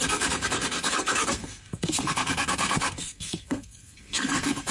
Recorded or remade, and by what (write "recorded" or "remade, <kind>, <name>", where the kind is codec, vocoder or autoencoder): remade, codec, SNAC